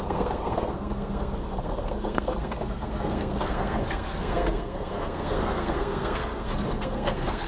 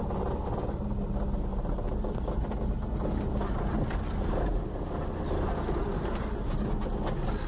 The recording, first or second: second